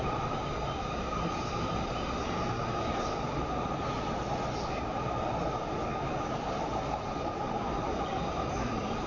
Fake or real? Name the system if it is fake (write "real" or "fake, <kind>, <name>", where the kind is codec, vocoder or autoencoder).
real